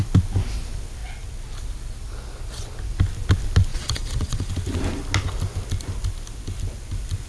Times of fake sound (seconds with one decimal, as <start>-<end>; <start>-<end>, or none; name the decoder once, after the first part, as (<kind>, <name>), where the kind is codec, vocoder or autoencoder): 3.7-4.5 (vocoder, Vocos)